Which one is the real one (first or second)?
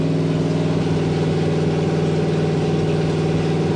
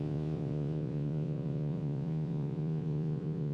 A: first